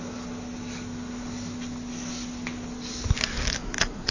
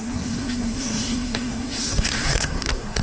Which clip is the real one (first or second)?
first